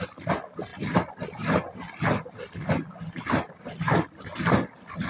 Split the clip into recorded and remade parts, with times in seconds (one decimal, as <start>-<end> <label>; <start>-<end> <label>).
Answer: 0.0-5.1 recorded